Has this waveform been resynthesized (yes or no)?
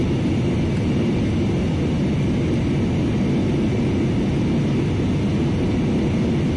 no